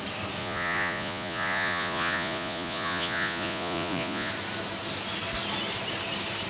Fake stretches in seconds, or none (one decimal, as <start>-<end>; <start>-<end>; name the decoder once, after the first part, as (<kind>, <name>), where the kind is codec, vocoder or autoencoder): 0.4-4.3 (vocoder, Vocos)